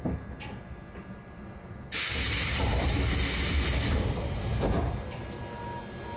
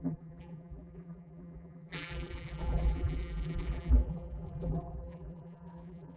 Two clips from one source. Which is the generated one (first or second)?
second